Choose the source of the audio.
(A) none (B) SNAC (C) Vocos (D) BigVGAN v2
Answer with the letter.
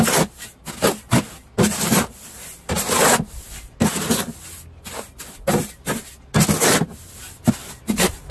A